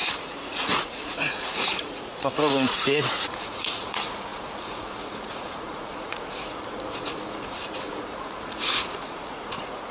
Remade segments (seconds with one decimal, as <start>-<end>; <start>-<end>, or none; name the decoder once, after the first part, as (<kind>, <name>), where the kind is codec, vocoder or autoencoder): 0.0-9.9 (vocoder, Vocos)